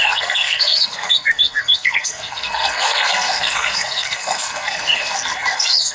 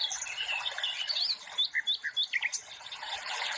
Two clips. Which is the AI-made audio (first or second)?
first